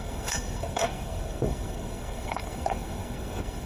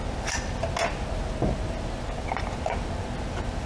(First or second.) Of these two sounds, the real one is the second